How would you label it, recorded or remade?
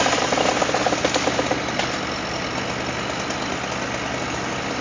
recorded